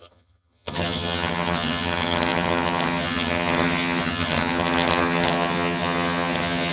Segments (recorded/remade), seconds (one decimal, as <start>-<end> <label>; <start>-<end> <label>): 0.0-6.7 remade